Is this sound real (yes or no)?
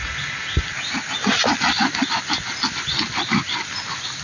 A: yes